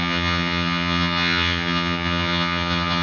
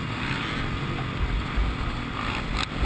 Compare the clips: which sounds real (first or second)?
second